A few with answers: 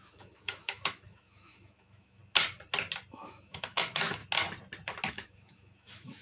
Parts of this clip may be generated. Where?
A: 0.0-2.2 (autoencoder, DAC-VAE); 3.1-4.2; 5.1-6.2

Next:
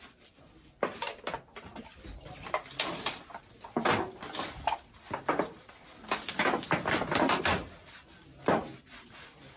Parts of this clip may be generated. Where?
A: none

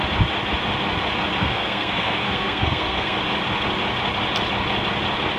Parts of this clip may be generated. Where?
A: 1.4-3.2 (codec, SNAC)